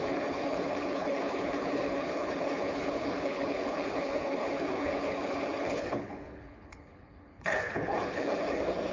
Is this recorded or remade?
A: remade